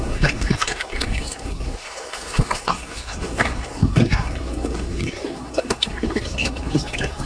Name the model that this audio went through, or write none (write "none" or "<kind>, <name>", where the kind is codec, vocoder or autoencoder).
codec, SNAC